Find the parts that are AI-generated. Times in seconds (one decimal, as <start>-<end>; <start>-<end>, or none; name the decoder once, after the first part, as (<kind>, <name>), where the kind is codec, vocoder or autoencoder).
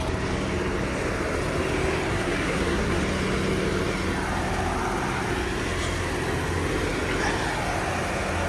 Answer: 2.1-3.0 (codec, SNAC)